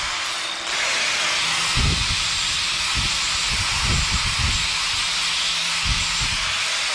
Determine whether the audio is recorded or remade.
recorded